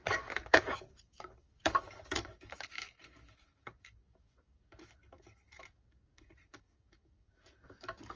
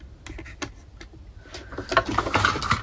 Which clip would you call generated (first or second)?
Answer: first